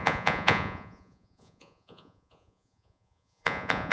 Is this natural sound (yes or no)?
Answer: no